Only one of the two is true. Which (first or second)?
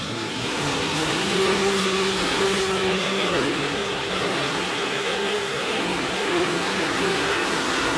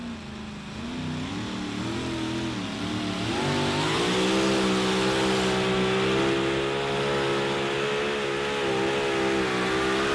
second